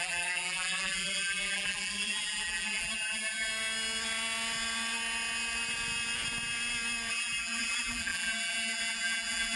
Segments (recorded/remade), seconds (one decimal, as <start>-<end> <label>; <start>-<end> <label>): 0.0-3.5 remade; 3.5-7.1 recorded; 7.1-9.6 remade